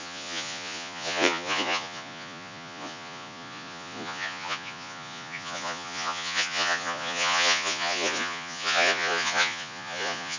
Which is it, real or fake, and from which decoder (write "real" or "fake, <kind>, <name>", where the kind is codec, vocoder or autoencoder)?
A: fake, vocoder, Vocos